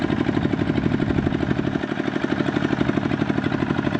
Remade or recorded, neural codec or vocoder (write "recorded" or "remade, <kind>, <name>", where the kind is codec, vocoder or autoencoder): recorded